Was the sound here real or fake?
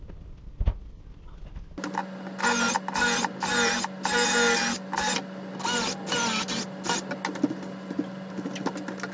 real